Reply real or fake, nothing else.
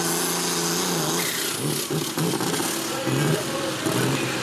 real